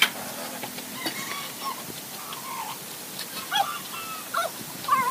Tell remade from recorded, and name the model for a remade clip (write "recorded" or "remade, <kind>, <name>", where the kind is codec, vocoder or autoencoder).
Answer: recorded